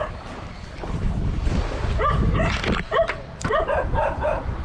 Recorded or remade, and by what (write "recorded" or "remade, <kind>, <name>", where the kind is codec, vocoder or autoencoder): remade, vocoder, BigVGAN v2